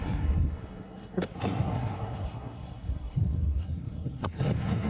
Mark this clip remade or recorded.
remade